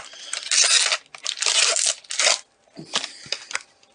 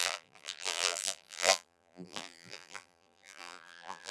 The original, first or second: first